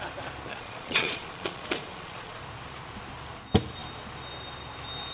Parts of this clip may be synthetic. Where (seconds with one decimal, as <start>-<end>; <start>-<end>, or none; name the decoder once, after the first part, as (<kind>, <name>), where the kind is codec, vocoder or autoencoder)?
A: 0.5-2.4 (vocoder, Vocos)